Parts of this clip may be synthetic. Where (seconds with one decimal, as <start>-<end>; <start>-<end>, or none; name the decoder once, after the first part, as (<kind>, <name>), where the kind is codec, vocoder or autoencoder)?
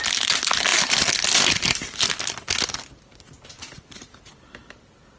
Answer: none